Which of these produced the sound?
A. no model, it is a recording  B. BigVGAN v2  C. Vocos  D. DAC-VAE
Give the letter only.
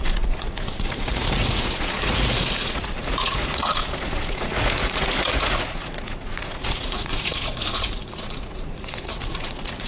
C